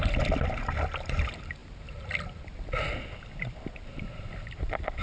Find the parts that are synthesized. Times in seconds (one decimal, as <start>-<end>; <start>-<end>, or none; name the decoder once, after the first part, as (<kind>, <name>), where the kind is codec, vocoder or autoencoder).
none